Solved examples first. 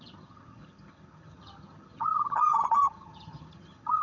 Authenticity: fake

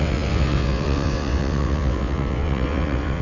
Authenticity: fake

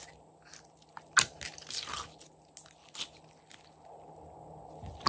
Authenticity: real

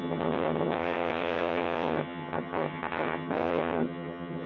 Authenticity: fake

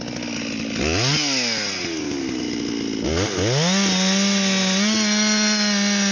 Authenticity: real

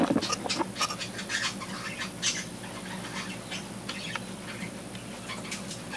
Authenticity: real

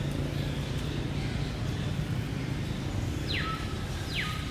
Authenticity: real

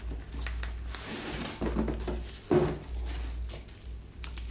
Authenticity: real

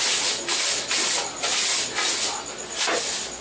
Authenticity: real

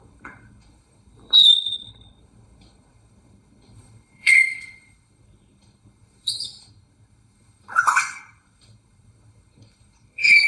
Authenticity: fake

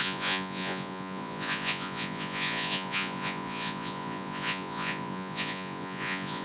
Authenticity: fake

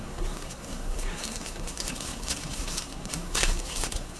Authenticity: fake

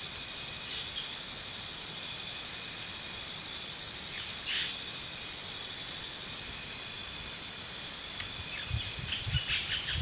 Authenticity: real